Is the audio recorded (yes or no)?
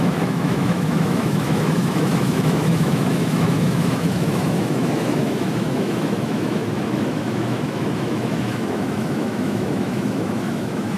no